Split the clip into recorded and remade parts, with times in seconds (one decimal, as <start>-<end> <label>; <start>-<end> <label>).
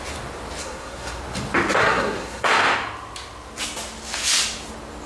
0.0-0.6 recorded; 0.6-1.2 remade; 1.2-1.8 recorded; 1.8-2.5 remade; 2.5-5.1 recorded